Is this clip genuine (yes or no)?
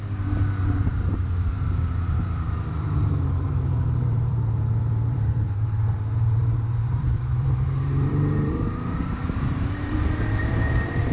no